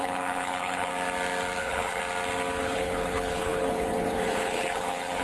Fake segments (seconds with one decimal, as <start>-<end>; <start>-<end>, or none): 0.0-0.9; 1.6-2.0; 2.6-5.2